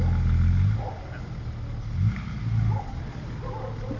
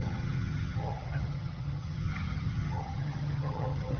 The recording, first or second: first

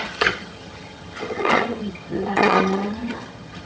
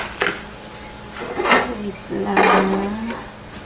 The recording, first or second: second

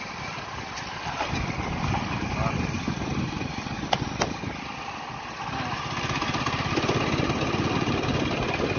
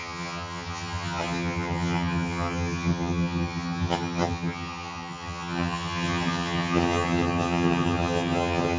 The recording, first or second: first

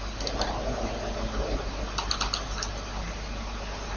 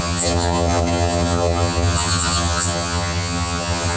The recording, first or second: first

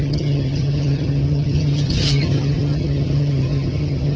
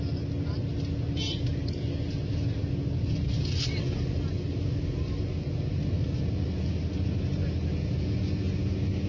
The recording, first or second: second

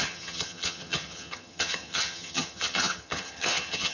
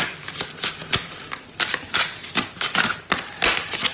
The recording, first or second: second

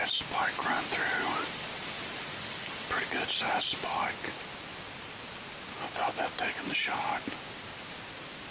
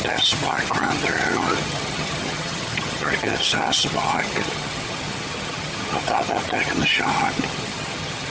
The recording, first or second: first